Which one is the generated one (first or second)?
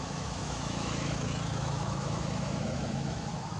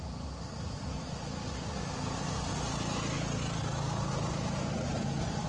first